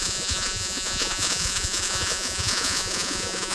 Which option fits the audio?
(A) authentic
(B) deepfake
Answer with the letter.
B